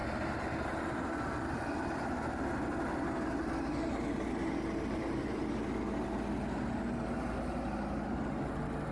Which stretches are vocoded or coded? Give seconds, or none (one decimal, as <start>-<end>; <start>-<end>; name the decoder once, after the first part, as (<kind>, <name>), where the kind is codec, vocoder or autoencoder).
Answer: none